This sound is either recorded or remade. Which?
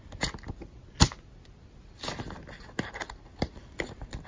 recorded